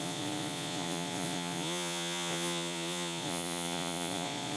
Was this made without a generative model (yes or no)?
no